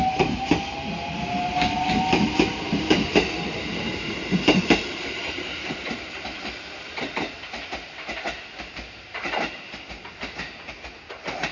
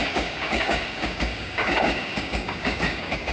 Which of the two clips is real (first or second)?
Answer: first